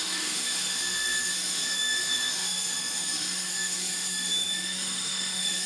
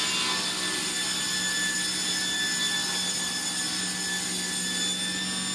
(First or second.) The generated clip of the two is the first